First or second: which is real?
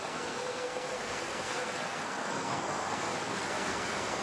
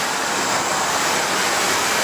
second